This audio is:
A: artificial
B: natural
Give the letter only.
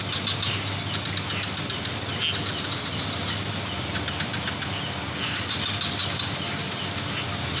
B